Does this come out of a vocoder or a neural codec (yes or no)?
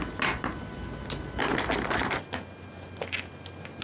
no